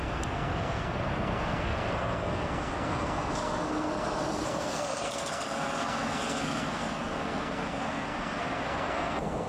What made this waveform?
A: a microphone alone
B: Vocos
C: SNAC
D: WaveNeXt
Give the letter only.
C